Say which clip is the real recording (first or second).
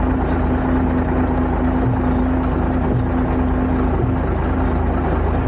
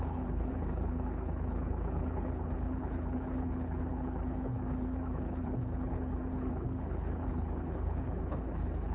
first